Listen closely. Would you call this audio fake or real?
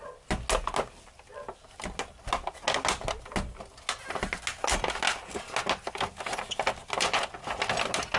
real